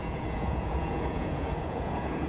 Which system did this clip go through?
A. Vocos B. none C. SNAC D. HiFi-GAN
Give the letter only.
A